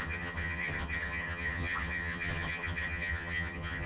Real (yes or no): no